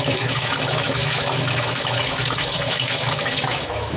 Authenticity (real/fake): fake